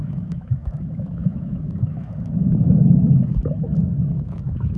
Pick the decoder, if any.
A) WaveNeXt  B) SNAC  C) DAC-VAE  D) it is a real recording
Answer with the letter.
C